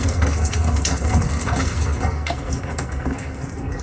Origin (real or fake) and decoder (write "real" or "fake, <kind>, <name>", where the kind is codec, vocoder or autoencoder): fake, codec, SNAC